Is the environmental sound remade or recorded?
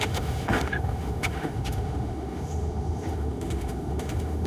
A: remade